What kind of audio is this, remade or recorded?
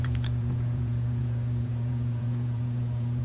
remade